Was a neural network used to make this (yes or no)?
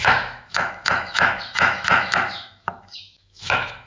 yes